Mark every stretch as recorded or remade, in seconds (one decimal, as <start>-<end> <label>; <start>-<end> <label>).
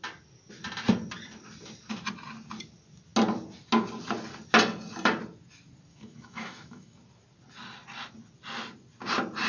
0.0-5.9 recorded; 5.9-7.0 remade; 7.0-9.5 recorded